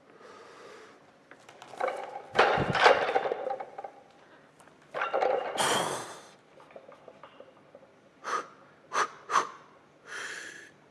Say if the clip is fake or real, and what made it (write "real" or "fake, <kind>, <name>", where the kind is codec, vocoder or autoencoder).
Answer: real